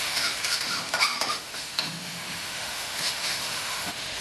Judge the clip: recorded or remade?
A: remade